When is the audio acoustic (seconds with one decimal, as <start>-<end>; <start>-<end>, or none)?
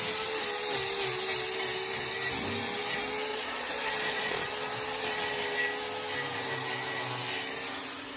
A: 0.0-3.3; 4.5-8.2